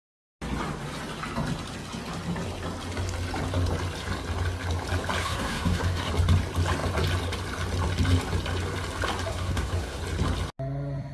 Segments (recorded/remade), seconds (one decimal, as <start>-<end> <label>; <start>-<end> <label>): 0.0-5.2 recorded; 5.2-6.1 remade; 6.1-9.3 recorded; 9.3-10.0 remade; 10.0-11.1 recorded